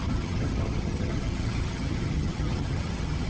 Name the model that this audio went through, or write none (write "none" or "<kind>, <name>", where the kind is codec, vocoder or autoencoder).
vocoder, HiFi-GAN